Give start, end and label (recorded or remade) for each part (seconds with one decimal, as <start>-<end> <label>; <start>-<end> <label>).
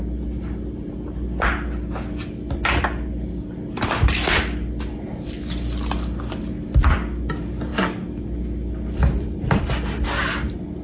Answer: 0.0-10.8 recorded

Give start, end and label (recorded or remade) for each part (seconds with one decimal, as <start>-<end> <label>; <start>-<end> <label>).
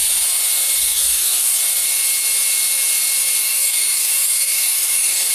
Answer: 0.0-0.8 recorded; 0.8-1.6 remade; 1.6-3.4 recorded; 3.4-5.3 remade